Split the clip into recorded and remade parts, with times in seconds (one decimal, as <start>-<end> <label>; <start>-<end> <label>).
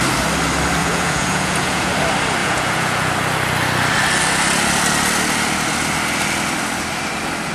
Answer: 0.0-0.8 recorded; 0.8-1.9 remade; 1.9-2.4 recorded; 2.4-3.1 remade; 3.1-7.5 recorded